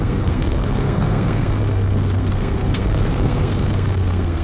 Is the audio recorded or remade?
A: remade